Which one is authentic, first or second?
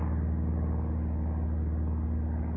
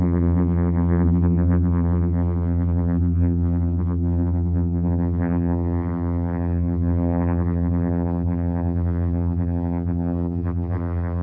first